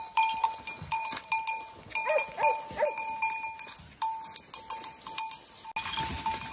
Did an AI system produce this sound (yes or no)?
no